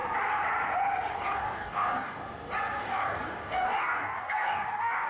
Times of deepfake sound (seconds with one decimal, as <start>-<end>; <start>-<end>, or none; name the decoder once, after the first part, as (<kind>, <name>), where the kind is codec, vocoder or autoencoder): 1.1-2.2 (codec, DAC); 2.8-5.1